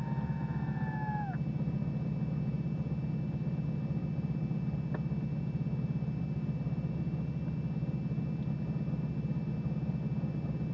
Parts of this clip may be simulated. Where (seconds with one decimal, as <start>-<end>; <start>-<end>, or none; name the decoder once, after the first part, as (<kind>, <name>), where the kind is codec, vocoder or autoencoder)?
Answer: none